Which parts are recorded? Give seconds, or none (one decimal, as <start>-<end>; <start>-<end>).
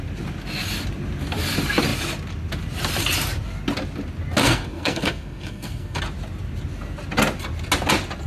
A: 0.0-4.4; 6.0-8.3